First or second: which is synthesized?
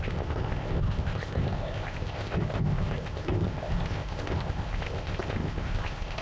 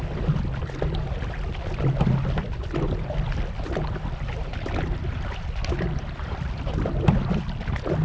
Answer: first